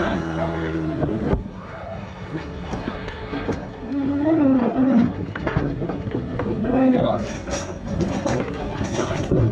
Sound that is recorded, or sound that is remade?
remade